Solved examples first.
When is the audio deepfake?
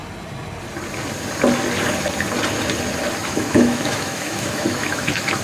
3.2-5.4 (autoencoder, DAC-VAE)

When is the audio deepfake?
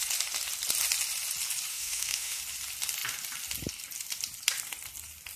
1.7-2.4 (autoencoder, DAC-VAE)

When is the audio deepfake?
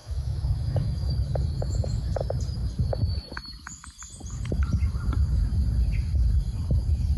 0.0-1.1 (autoencoder, DAC-VAE)